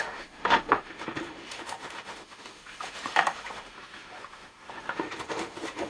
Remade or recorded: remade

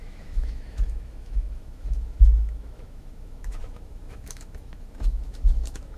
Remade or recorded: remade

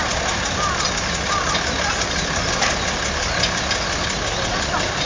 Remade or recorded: recorded